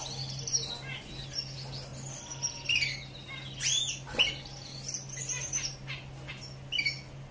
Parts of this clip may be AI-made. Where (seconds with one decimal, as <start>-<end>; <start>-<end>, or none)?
none